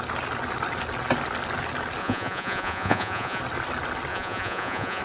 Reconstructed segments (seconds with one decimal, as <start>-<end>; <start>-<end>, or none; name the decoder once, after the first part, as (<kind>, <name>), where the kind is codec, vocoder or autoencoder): 2.0-3.4 (vocoder, Vocos); 4.1-5.0

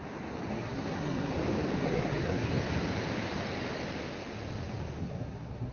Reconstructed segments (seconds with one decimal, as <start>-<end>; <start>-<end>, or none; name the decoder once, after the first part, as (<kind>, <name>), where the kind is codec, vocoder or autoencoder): 0.5-1.3 (codec, SNAC); 1.8-2.5; 5.0-5.7

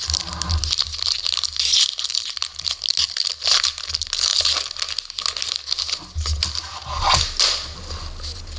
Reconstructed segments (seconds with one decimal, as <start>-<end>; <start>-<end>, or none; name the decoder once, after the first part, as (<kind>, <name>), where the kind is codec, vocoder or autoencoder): none

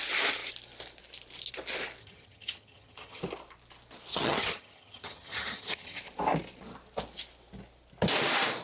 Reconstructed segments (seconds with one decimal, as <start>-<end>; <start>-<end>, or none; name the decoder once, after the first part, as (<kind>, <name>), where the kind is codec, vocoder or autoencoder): 2.0-3.2 (vocoder, HiFi-GAN); 4.1-6.0

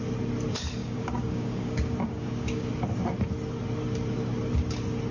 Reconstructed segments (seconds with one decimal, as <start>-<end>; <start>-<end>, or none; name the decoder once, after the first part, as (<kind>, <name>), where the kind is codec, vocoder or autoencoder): 0.8-2.7 (codec, DAC)

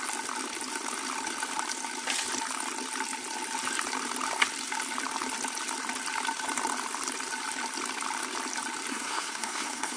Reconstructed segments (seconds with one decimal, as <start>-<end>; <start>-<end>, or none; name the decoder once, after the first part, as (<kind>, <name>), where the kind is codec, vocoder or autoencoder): 8.9-10.0 (codec, SNAC)